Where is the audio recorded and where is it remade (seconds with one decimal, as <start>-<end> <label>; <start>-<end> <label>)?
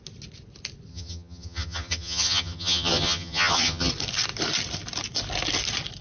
0.0-0.9 recorded; 0.9-3.9 remade; 3.9-6.0 recorded